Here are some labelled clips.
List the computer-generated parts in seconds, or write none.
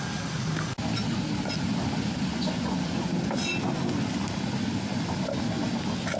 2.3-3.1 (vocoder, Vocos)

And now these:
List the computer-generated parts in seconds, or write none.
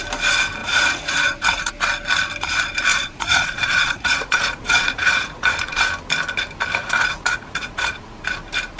0.6-1.7 (vocoder, Vocos); 2.9-5.8; 6.8-8.2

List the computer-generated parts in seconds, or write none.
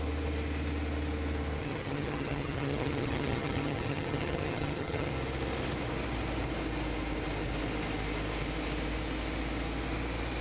1.6-5.1 (vocoder, HiFi-GAN)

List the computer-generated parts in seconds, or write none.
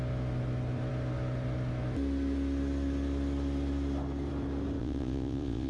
4.8-5.7 (vocoder, Vocos)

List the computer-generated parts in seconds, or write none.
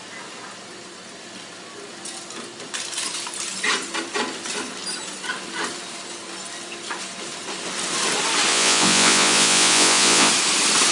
8.5-10.3 (vocoder, Vocos)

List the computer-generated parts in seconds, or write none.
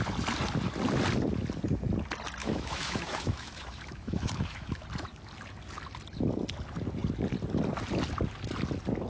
2.4-4.9 (autoencoder, DAC-VAE)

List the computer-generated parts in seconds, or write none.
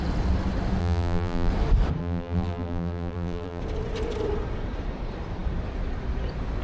0.8-1.5 (vocoder, BigVGAN v2); 2.0-3.6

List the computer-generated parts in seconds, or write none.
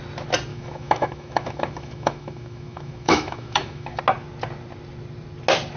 0.5-4.0 (autoencoder, DAC-VAE)